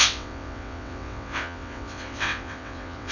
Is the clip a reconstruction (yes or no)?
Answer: yes